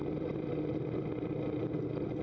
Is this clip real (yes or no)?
yes